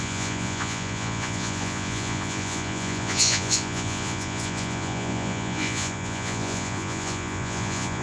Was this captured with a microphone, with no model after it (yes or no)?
no